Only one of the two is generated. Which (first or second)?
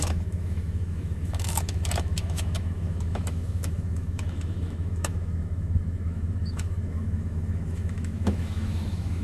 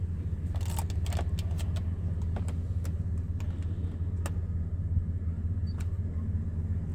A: first